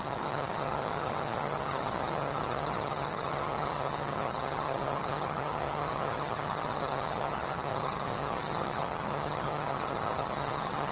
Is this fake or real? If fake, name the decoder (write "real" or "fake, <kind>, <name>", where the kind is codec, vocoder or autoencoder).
fake, vocoder, HiFi-GAN